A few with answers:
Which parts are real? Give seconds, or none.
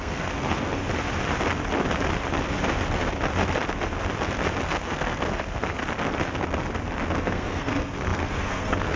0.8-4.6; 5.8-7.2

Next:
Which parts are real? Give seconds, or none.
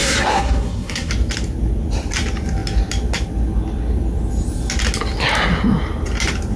1.1-6.6